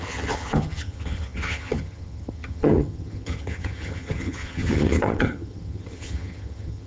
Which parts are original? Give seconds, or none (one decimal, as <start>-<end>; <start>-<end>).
none